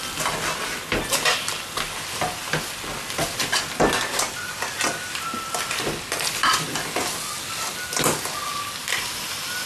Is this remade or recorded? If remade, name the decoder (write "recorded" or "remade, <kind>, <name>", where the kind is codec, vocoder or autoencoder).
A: recorded